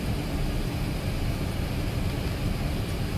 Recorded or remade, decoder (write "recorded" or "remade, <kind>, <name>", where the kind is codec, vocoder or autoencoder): recorded